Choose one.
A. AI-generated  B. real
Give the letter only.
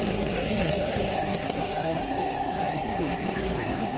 A